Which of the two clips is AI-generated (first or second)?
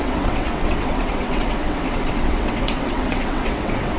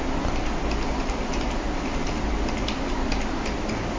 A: first